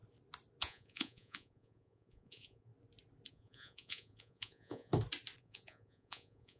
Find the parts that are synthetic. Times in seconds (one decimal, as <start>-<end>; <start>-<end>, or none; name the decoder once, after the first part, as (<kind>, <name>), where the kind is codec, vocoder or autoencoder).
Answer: 0.6-2.7 (vocoder, Vocos); 3.3-4.9; 5.4-6.6